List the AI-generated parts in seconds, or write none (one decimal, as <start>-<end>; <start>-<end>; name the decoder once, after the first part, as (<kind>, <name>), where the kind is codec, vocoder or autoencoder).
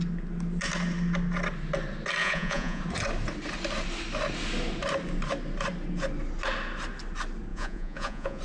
2.2-2.8 (vocoder, Vocos); 7.5-8.4